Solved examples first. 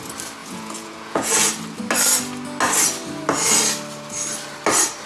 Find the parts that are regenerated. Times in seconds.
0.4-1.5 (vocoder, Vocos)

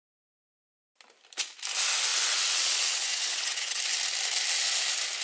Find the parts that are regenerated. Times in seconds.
2.1-3.8 (vocoder, WaveNeXt)

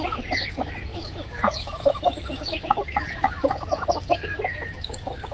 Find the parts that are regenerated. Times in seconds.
0.0-5.3 (autoencoder, DAC-VAE)

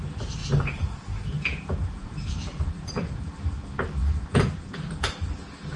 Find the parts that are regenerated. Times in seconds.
0.4-3.3 (vocoder, Vocos); 4.0-5.1